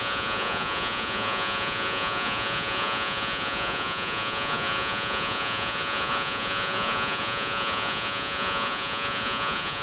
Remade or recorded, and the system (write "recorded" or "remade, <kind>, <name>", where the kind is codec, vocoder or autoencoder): remade, vocoder, Vocos